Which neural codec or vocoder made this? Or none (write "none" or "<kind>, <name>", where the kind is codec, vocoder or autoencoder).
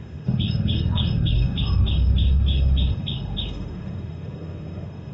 autoencoder, DAC-VAE